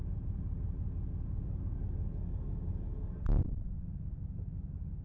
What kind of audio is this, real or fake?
real